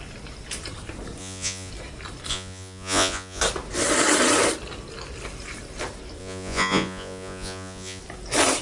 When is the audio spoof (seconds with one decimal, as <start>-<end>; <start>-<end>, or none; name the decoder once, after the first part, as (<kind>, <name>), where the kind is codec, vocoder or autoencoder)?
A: 1.2-1.7 (vocoder, Vocos); 2.3-3.4; 6.2-8.0